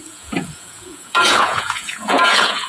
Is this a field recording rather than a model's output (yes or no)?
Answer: no